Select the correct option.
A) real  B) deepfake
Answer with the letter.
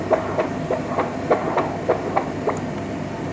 A